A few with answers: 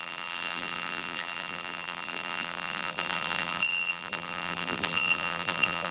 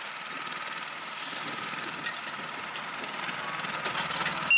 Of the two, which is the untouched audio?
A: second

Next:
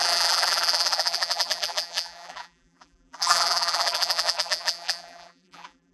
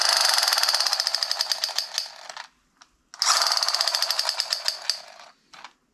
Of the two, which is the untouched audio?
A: second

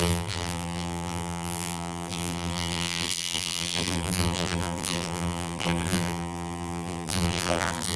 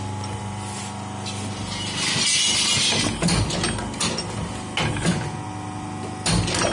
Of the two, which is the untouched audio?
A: second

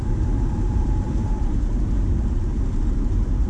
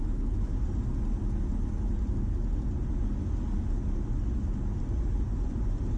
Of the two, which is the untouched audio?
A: second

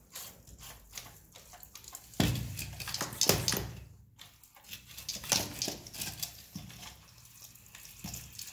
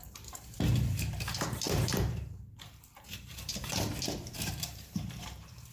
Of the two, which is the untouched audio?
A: first